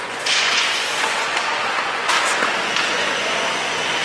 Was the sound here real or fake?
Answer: fake